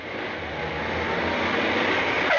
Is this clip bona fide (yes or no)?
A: yes